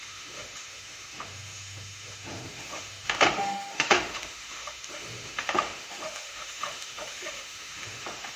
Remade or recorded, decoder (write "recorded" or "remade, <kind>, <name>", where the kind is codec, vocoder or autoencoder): remade, autoencoder, DAC-VAE